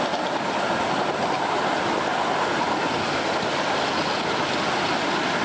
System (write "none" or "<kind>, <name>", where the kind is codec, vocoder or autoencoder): none